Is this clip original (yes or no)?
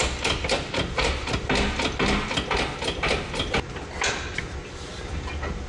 yes